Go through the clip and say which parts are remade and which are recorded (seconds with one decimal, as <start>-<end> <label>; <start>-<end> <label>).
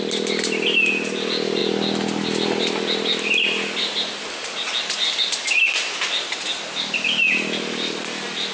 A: 0.0-8.5 recorded